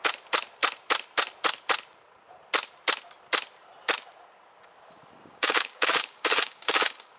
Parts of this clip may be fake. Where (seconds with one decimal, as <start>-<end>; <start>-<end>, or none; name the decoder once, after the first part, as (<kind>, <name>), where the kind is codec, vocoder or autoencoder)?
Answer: 5.2-7.2 (codec, DAC)